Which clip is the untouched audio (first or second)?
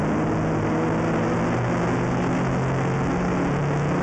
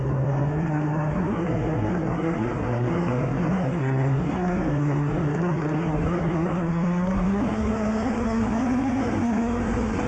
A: first